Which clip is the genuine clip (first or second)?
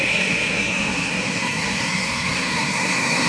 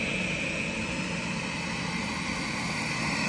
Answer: second